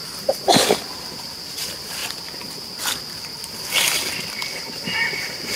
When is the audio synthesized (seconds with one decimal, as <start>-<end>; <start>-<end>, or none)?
none

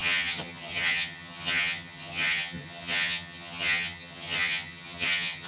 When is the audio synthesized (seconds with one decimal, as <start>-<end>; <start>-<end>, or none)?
0.0-5.5

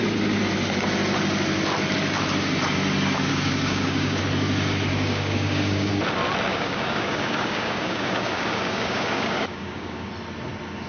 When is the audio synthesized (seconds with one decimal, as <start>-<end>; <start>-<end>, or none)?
3.3-4.2; 4.9-5.9; 6.5-10.1

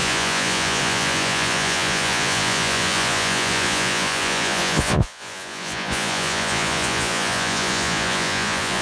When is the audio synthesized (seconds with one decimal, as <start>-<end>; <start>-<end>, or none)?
0.0-8.8

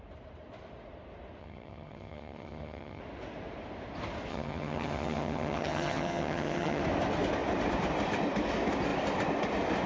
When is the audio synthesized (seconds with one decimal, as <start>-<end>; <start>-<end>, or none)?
1.4-3.0; 4.3-6.8

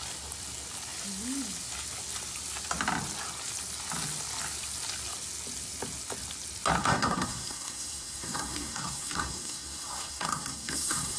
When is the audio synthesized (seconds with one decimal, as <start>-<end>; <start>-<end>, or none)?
6.8-11.2